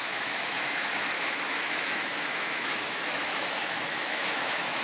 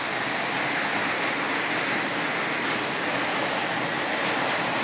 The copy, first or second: first